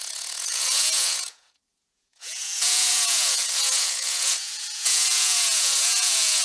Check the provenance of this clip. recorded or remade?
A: remade